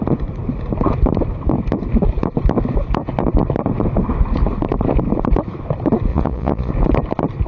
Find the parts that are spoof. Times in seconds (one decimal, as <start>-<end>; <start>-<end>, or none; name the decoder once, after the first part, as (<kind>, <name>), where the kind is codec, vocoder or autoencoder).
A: 6.1-6.7 (vocoder, Vocos)

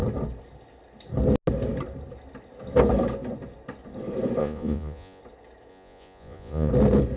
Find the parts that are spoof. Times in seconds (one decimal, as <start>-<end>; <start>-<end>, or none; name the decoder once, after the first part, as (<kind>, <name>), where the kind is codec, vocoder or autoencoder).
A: 4.4-5.2 (vocoder, Vocos); 5.7-6.7

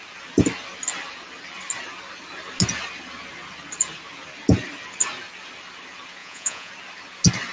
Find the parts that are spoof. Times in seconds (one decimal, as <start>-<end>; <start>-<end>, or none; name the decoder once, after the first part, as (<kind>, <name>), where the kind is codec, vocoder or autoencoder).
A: 6.2-6.7 (vocoder, Vocos)

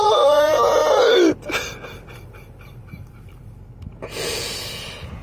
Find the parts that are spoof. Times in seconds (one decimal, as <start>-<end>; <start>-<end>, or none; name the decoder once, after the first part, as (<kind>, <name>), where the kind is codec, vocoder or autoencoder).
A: 0.0-0.8 (vocoder, Vocos); 3.9-5.2

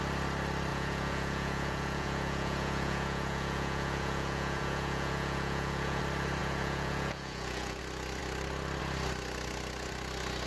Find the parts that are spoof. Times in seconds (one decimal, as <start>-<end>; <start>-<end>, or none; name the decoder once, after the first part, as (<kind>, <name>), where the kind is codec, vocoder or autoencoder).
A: 0.7-6.0 (vocoder, Vocos); 6.4-7.8

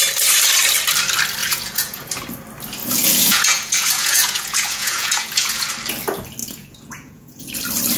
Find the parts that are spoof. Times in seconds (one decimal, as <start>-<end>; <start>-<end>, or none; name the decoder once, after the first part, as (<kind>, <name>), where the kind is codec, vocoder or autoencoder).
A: 1.4-2.1 (vocoder, Vocos); 2.8-5.7; 6.4-7.5